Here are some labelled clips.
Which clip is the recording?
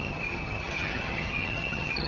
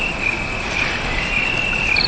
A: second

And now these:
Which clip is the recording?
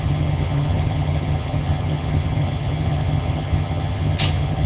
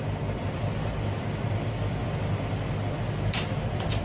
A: second